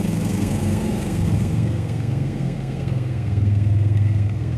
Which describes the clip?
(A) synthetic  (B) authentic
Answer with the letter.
A